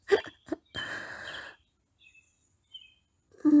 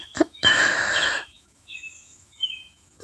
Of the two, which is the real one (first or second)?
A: first